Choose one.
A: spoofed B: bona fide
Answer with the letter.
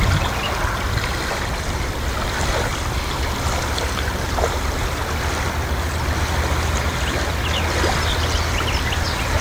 B